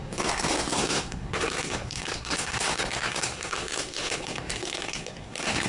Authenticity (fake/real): fake